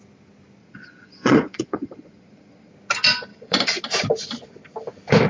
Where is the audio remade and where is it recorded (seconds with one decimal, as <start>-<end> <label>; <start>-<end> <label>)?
0.0-0.6 recorded; 0.6-2.7 remade; 2.7-3.3 recorded; 3.3-3.8 remade; 3.8-5.3 recorded